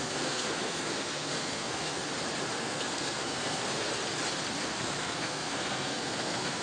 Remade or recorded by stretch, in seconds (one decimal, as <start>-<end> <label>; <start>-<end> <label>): 0.0-2.0 remade; 2.0-2.6 recorded; 2.6-3.9 remade; 3.9-4.6 recorded; 4.6-6.6 remade